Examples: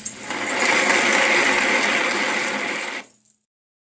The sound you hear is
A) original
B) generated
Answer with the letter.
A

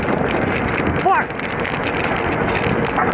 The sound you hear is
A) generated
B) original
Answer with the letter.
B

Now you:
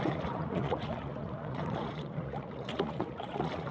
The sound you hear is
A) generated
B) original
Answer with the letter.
A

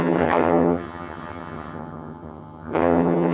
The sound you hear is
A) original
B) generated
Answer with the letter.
B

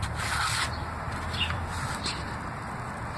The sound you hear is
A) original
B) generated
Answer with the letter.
A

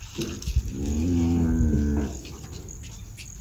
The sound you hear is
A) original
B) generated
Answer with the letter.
A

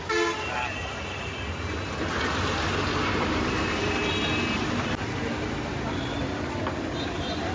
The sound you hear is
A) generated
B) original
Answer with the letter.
B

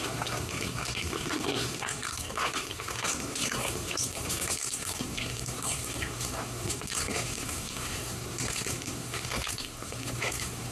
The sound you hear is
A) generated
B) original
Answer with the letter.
A